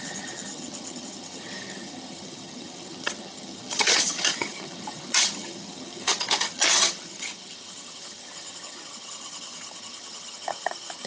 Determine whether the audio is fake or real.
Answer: fake